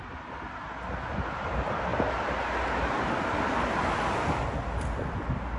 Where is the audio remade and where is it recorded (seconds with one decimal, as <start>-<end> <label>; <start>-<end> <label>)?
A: 0.0-5.6 recorded